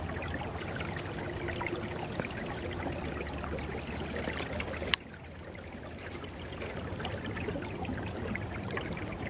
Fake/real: real